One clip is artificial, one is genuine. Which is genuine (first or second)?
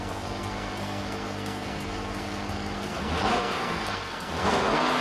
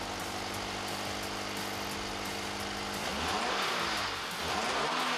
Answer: second